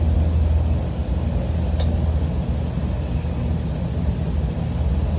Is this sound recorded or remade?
recorded